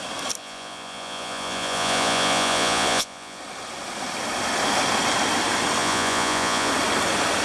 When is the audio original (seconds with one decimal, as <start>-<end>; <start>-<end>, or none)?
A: 0.0-0.4; 3.4-5.8; 6.7-7.4